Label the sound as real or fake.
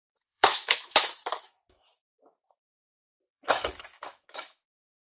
fake